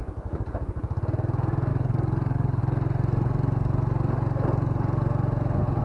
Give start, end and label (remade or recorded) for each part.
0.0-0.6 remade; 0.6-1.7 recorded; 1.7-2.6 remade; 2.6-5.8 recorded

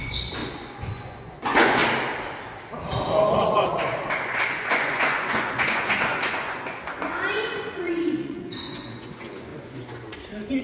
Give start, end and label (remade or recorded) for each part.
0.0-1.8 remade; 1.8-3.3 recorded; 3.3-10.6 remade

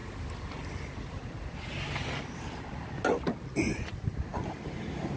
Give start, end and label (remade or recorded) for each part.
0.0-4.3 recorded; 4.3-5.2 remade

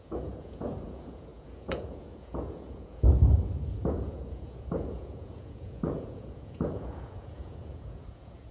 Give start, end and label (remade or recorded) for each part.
0.0-8.5 remade

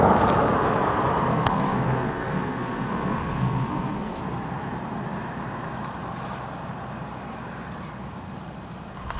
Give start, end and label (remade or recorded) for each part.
0.0-1.3 recorded; 1.3-4.2 remade; 4.2-9.2 recorded